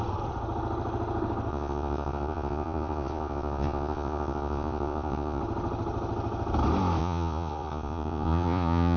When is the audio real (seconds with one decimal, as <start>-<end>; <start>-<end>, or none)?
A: 0.0-1.5; 5.4-7.0

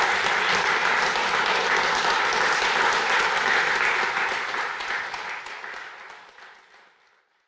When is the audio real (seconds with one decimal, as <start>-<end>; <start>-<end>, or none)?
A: 0.0-7.5

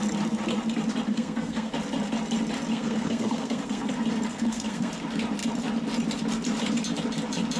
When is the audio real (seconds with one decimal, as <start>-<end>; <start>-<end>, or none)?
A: 0.0-1.1; 1.7-2.7; 3.9-4.3; 4.9-7.6

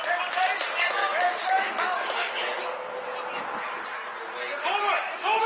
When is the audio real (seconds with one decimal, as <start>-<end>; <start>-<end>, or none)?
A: 0.0-1.0; 2.6-5.5

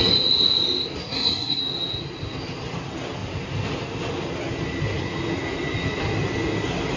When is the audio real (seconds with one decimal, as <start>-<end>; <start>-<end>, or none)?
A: 0.0-1.0; 1.6-7.0

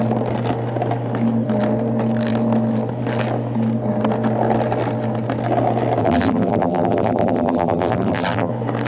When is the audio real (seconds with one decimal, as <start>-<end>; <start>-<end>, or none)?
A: 0.0-6.0; 8.5-8.9

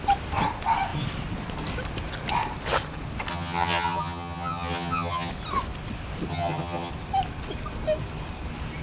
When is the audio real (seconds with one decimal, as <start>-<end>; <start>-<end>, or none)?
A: 0.0-3.3; 5.3-6.3; 6.9-8.8